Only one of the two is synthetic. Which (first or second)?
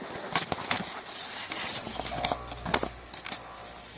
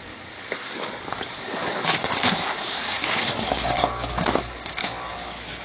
second